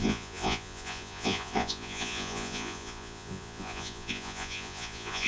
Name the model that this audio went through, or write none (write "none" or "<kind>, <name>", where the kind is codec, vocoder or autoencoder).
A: vocoder, Vocos